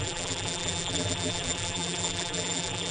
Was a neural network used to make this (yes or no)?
yes